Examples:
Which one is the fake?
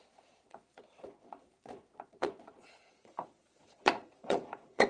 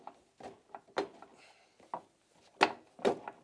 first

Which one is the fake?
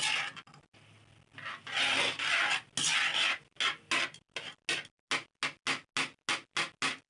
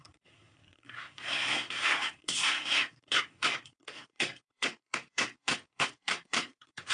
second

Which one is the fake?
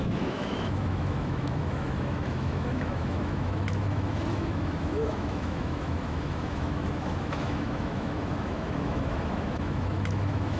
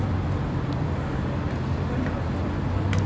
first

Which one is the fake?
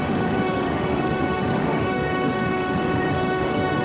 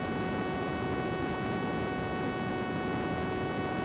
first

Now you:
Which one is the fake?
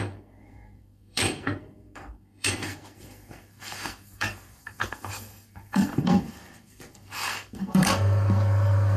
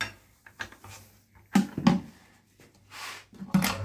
first